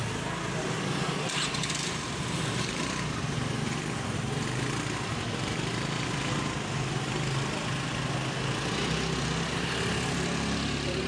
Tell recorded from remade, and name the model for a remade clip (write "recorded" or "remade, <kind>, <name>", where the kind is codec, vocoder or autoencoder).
recorded